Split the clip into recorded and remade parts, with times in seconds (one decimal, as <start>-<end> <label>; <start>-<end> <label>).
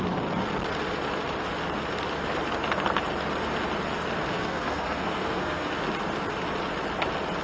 0.0-4.3 recorded; 4.3-5.7 remade; 5.7-7.4 recorded